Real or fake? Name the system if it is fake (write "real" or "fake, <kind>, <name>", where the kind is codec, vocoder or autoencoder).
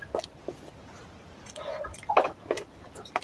real